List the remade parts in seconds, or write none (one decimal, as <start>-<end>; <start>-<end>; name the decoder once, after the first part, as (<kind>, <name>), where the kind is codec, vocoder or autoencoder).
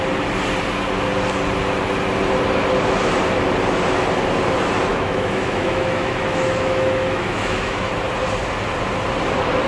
4.9-7.9 (autoencoder, DAC-VAE)